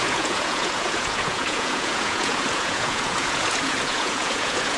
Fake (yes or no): yes